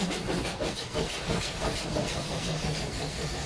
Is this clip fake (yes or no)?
yes